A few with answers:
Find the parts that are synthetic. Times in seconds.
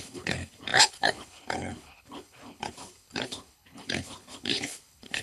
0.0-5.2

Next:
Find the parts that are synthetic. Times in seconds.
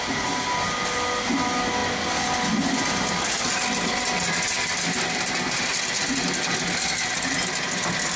none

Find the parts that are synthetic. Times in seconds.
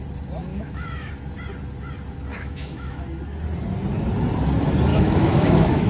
0.5-1.1; 2.3-3.0; 4.9-5.9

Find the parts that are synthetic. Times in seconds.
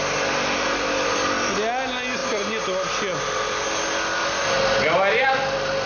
none